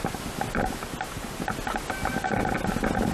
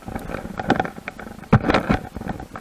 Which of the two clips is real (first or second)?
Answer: first